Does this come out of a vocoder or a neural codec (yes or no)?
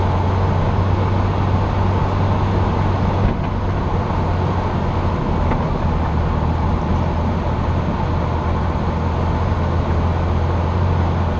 no